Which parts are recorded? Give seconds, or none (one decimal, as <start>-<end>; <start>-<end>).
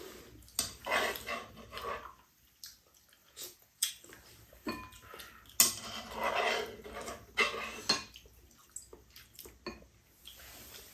0.0-3.2; 3.9-10.9